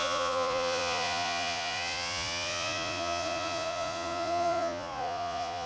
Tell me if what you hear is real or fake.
fake